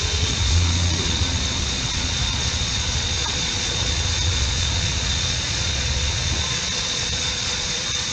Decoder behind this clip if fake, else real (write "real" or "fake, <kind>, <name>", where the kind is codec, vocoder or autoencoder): fake, vocoder, Vocos